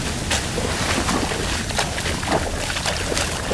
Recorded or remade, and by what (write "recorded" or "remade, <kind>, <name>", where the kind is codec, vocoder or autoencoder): recorded